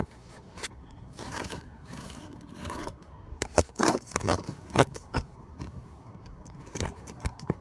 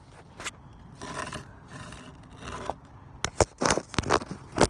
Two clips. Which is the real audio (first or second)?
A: second